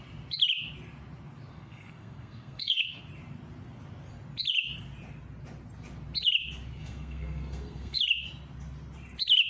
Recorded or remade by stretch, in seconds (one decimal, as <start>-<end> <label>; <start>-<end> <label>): 0.0-1.5 recorded; 1.5-3.0 remade; 3.0-6.8 recorded; 6.8-8.0 remade; 8.0-9.5 recorded